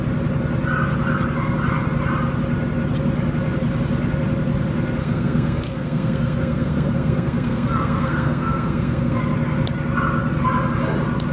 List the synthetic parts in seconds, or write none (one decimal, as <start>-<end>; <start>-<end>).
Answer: 5.0-9.2